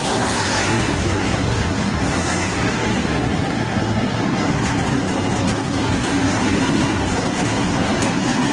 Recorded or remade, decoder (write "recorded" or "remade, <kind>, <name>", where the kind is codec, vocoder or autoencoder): remade, codec, SNAC